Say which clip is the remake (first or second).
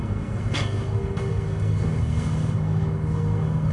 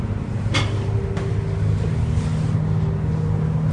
first